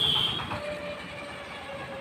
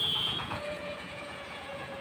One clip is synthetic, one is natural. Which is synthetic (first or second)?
second